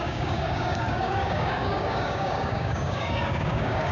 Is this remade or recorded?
remade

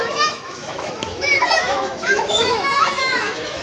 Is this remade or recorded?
remade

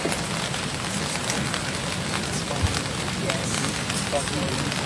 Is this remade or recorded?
recorded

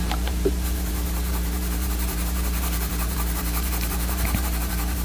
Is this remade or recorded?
remade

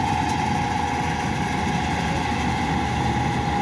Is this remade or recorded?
recorded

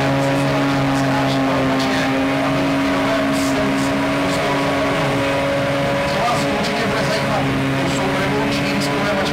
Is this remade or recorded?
recorded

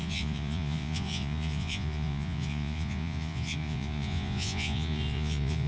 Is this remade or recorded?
remade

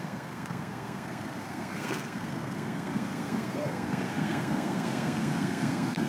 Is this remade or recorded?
remade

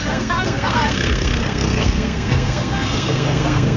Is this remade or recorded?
remade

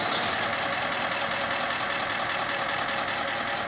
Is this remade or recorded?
recorded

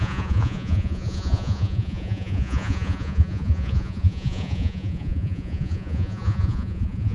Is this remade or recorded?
remade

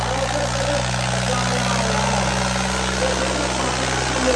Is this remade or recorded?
recorded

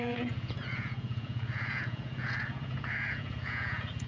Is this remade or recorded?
remade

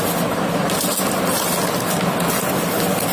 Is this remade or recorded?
recorded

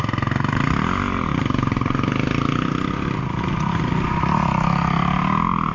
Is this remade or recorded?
recorded